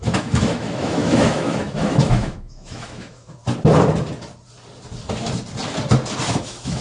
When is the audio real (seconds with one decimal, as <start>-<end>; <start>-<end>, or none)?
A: 3.4-6.3